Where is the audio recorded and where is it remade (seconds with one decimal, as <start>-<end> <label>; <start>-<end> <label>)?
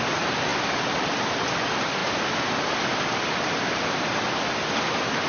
0.0-0.5 recorded; 0.5-1.4 remade; 1.4-2.0 recorded; 2.0-4.2 remade; 4.2-5.3 recorded